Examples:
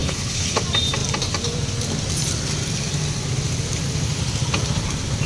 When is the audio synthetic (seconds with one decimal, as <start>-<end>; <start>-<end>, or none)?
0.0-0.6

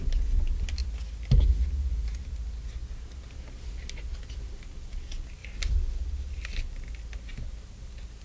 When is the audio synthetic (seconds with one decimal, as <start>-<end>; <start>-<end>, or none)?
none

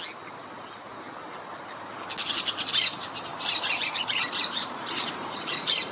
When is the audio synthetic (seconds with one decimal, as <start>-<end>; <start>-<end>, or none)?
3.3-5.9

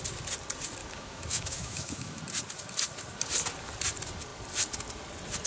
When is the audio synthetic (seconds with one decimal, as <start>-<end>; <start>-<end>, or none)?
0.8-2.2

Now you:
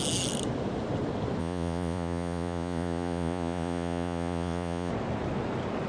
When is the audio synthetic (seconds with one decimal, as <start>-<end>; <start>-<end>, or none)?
1.4-4.9

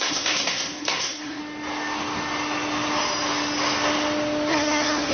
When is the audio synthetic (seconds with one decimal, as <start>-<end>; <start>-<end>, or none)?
0.0-1.4; 4.5-5.1

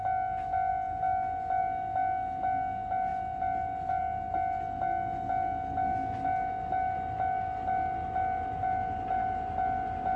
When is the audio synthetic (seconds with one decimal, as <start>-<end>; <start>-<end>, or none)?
none